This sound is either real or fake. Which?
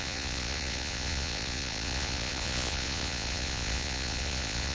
fake